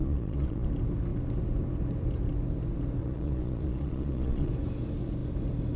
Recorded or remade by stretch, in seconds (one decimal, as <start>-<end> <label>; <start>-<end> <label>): 0.0-0.7 remade; 0.7-3.0 recorded; 3.0-4.5 remade; 4.5-5.8 recorded